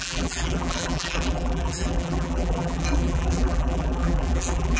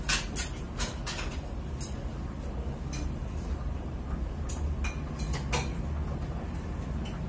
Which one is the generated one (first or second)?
first